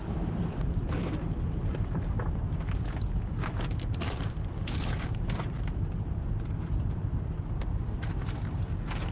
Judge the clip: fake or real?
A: fake